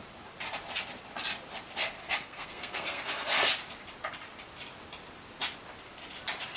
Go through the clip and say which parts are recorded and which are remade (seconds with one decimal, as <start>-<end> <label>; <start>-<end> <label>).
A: 0.0-2.2 recorded; 2.2-3.0 remade; 3.0-6.6 recorded

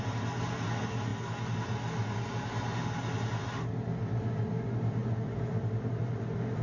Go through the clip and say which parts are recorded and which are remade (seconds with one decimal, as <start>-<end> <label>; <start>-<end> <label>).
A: 0.0-5.0 recorded; 5.0-6.0 remade; 6.0-6.6 recorded

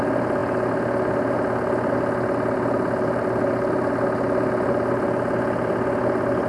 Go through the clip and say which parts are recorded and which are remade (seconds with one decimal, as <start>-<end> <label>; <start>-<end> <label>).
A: 0.0-6.5 recorded

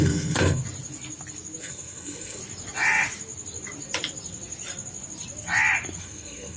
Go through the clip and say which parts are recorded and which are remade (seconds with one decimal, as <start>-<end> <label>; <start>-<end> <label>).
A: 0.0-0.6 remade; 0.6-1.6 recorded; 1.6-2.4 remade; 2.4-6.0 recorded; 6.0-6.6 remade

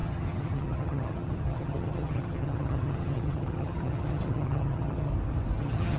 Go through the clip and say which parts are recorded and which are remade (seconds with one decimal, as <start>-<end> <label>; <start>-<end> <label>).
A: 0.0-5.1 remade; 5.1-5.6 recorded; 5.6-6.0 remade

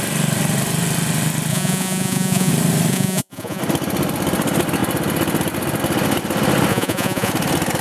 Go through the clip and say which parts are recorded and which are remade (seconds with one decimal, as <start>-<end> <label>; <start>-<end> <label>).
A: 0.0-1.5 recorded; 1.5-2.5 remade; 2.5-2.9 recorded; 2.9-3.6 remade; 3.6-6.7 recorded; 6.7-7.3 remade; 7.3-7.8 recorded

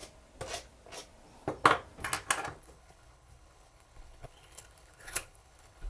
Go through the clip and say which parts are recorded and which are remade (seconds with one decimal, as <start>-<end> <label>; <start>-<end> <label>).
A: 0.0-2.6 recorded; 2.6-5.9 remade